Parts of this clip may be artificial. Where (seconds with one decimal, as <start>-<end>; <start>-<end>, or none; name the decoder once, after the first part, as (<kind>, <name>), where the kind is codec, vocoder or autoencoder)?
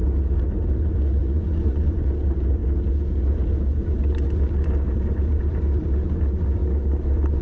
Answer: 1.2-2.0 (vocoder, Vocos)